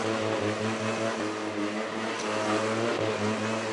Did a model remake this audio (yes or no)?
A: no